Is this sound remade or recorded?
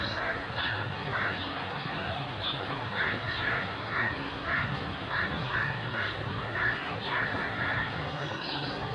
remade